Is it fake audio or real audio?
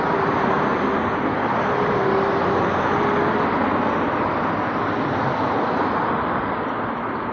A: real